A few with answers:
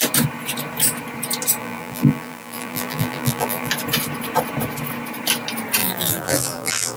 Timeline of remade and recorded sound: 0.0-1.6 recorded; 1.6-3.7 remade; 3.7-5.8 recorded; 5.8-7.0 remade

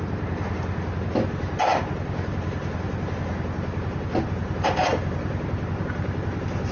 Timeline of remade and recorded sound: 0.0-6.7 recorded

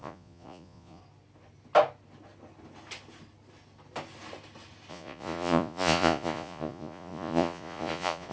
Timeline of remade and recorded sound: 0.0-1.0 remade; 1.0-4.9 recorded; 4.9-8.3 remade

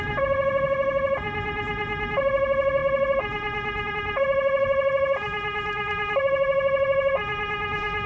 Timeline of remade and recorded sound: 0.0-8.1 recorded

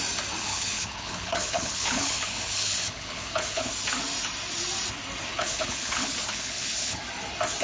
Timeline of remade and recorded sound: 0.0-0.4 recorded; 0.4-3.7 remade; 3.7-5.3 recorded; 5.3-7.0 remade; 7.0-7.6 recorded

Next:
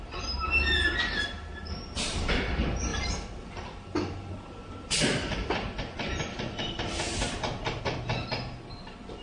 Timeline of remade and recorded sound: 0.0-2.9 recorded; 2.9-7.8 remade; 7.8-9.2 recorded

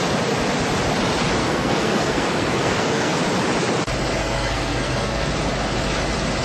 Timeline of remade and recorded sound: 0.0-1.4 recorded; 1.4-3.2 remade; 3.2-4.2 recorded; 4.2-5.3 remade; 5.3-6.4 recorded